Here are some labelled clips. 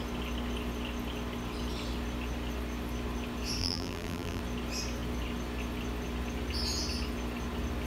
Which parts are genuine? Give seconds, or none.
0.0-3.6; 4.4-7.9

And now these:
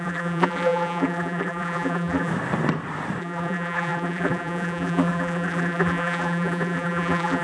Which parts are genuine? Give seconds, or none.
2.3-3.2